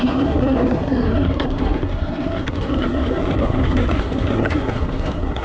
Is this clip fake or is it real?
fake